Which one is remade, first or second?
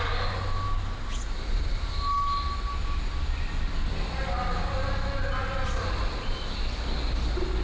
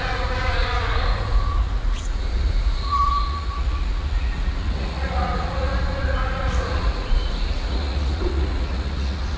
second